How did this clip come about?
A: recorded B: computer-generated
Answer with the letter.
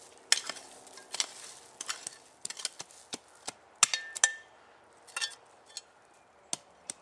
A